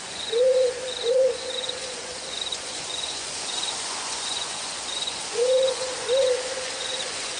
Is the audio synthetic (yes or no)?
yes